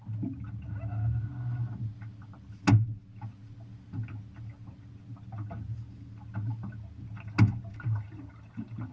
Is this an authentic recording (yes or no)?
yes